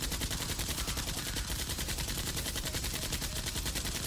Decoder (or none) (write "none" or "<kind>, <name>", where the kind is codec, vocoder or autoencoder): vocoder, BigVGAN v2